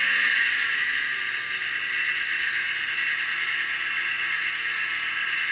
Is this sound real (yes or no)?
yes